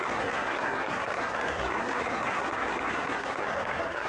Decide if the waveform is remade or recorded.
remade